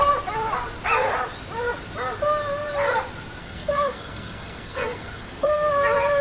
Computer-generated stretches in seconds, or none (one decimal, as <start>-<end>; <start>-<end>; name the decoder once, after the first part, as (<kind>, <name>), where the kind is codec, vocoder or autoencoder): 3.4-5.7 (codec, SNAC)